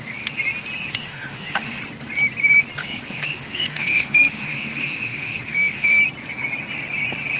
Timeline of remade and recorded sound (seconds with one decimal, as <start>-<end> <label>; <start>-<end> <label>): 0.0-0.9 recorded; 0.9-1.8 remade; 1.8-2.8 recorded; 2.8-6.0 remade; 6.0-7.4 recorded